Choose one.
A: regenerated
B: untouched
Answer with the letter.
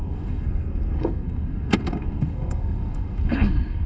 A